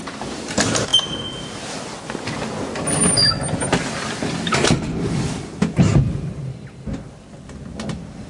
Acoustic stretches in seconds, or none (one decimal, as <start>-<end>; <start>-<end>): 0.0-8.3